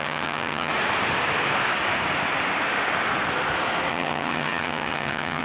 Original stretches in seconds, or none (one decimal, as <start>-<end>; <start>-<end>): 0.7-3.9